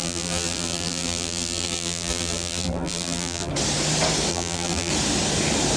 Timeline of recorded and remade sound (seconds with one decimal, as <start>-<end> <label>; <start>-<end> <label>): 0.0-3.5 remade; 3.5-4.3 recorded; 4.3-4.9 remade; 4.9-5.8 recorded